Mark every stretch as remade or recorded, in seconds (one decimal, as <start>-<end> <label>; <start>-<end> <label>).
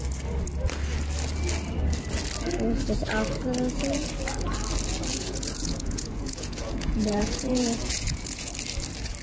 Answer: 0.0-5.1 recorded; 5.1-8.5 remade; 8.5-9.2 recorded